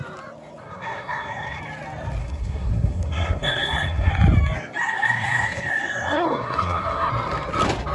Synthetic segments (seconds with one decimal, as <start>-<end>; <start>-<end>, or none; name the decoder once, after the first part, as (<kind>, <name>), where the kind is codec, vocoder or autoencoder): 0.6-1.6 (codec, SNAC); 2.2-4.1; 4.8-7.1